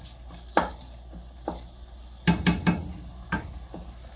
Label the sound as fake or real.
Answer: real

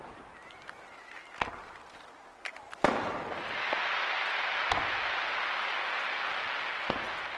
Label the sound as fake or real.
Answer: real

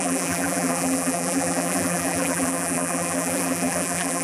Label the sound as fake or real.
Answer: fake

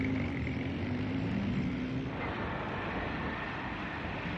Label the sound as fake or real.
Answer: real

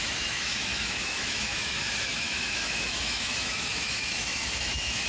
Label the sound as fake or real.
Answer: fake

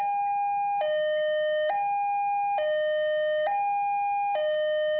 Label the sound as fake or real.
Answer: real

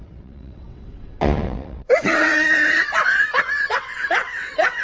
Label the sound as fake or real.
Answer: fake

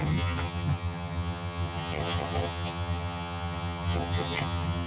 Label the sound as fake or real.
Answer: fake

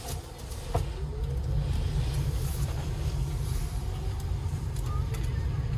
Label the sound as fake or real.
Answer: real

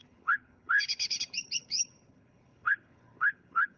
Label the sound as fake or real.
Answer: fake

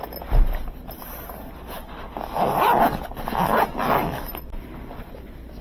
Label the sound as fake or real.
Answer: real